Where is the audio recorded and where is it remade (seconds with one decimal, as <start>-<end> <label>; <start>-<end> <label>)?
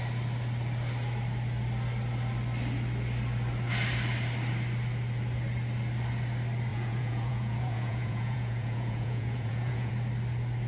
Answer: 0.0-6.7 recorded; 6.7-9.9 remade; 9.9-10.7 recorded